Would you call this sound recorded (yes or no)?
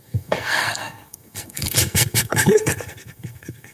no